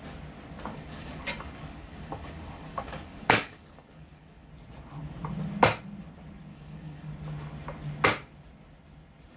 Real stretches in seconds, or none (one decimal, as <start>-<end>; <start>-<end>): 0.0-0.7; 4.5-6.5; 7.1-9.4